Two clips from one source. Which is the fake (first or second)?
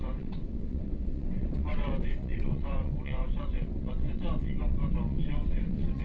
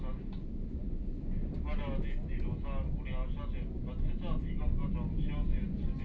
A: first